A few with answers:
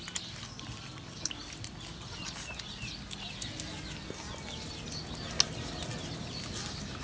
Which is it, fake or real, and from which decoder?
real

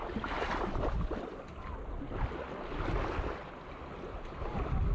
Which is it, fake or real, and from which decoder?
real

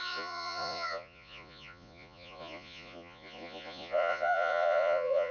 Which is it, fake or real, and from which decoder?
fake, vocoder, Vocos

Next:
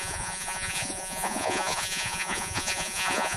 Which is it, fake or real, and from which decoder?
fake, vocoder, Vocos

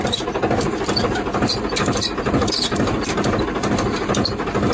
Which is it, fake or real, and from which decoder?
real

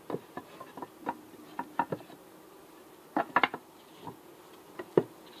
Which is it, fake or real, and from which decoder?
real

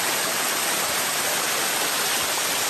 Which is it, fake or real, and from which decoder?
real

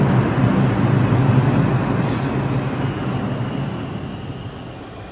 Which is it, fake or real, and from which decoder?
real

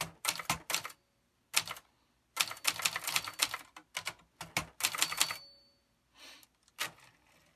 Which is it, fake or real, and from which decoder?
real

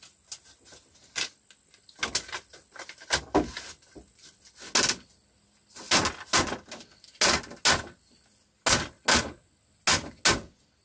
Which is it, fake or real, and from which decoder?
real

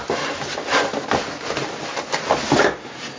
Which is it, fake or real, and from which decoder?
real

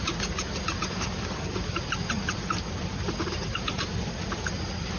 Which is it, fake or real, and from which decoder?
real